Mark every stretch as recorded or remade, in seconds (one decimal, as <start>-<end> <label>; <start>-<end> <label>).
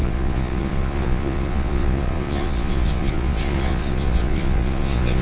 0.0-5.2 remade